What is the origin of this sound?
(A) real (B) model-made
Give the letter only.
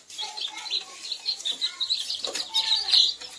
A